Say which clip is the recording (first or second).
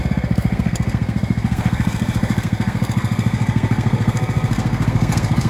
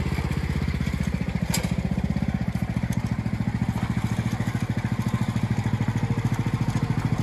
second